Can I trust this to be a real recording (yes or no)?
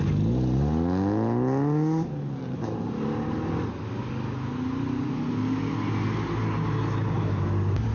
yes